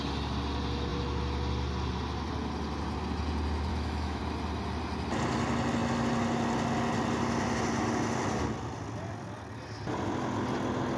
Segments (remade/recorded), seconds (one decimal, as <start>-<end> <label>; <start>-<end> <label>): 0.0-3.7 recorded; 3.7-4.2 remade; 4.2-11.0 recorded